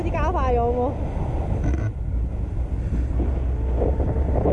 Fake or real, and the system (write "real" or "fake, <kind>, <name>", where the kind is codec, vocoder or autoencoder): real